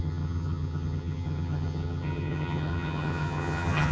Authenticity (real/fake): fake